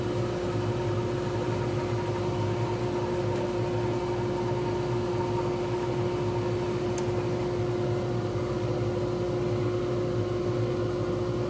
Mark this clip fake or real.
real